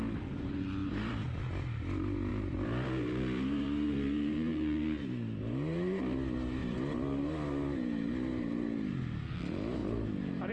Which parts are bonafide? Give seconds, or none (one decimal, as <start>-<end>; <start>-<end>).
0.0-0.8; 1.4-2.3; 6.0-9.8